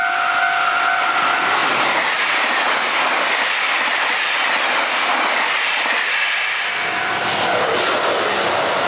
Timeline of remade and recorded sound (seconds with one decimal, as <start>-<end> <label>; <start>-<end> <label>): 0.0-8.9 recorded